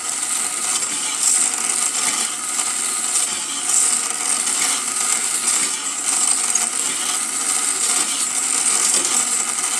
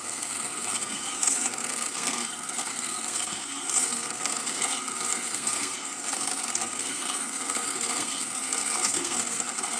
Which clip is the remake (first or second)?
second